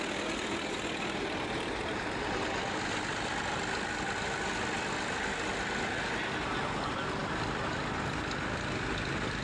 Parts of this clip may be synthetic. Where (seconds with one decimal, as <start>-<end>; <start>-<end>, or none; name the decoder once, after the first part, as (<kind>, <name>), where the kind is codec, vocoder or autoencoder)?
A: none